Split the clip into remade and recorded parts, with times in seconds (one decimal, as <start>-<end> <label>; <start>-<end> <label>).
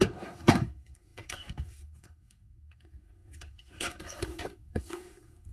0.0-5.5 remade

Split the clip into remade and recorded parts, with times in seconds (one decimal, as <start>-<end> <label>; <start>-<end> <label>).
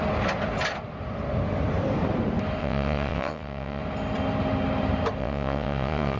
0.0-2.6 recorded; 2.6-3.8 remade; 3.8-5.2 recorded; 5.2-6.2 remade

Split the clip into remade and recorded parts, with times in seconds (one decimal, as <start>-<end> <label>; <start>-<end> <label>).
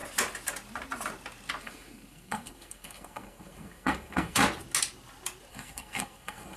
0.0-1.6 recorded; 1.6-4.4 remade; 4.4-5.5 recorded; 5.5-6.6 remade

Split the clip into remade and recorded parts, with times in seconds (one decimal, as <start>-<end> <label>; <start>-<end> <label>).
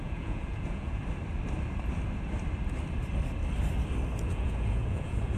0.0-1.0 remade; 1.0-4.2 recorded; 4.2-5.4 remade